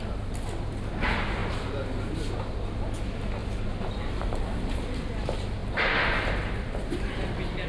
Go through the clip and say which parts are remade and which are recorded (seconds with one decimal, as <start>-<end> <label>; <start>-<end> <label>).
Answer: 0.0-7.7 recorded